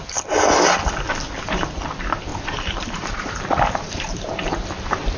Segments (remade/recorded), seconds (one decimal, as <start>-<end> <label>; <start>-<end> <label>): 0.0-2.3 recorded; 2.3-4.6 remade; 4.6-5.2 recorded